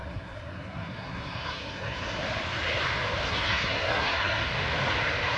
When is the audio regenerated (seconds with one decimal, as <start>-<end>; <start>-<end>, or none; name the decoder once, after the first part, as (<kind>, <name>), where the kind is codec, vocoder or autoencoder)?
0.0-2.2 (codec, SNAC); 3.3-4.5